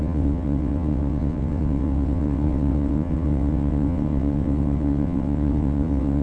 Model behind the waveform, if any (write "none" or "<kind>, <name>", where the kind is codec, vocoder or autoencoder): vocoder, WaveNeXt